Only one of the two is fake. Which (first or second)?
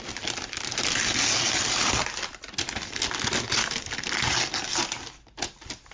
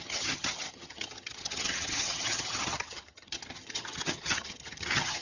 second